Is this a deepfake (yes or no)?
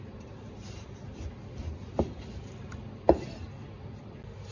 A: no